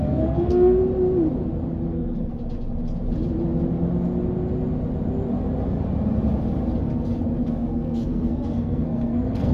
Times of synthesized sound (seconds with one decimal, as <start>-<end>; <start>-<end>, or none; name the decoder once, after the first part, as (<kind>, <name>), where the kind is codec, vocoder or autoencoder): 0.0-0.8 (codec, SNAC); 1.9-2.3; 7.4-9.5